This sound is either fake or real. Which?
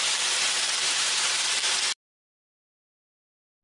real